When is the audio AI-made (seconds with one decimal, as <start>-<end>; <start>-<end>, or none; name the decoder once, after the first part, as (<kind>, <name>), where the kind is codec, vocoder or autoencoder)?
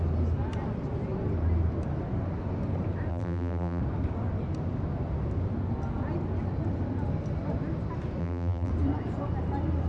3.1-3.8 (vocoder, BigVGAN v2); 8.2-8.7